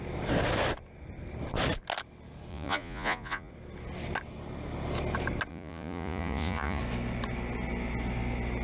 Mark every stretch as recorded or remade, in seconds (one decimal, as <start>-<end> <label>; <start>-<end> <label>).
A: 0.0-2.5 recorded; 2.5-3.5 remade; 3.5-5.5 recorded; 5.5-6.8 remade; 6.8-8.6 recorded